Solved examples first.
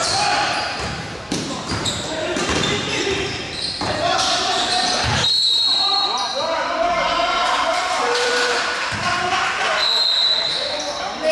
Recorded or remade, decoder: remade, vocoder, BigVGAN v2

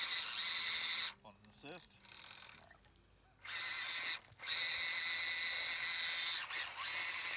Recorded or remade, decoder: recorded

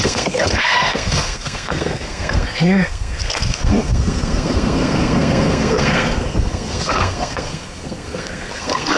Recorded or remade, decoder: remade, codec, SNAC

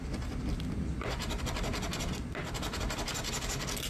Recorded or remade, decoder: recorded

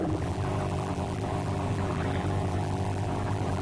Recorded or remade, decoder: remade, vocoder, BigVGAN v2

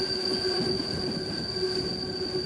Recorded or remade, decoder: recorded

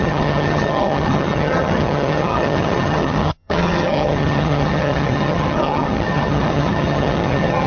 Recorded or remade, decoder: remade, vocoder, HiFi-GAN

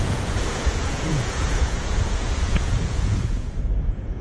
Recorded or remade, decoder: remade, vocoder, Vocos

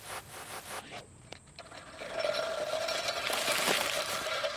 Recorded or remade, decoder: recorded